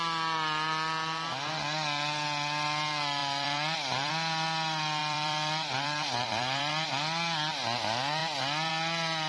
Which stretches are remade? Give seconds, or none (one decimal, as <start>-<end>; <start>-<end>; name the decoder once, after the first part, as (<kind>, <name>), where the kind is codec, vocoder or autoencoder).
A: 3.2-4.1 (vocoder, BigVGAN v2); 5.0-6.9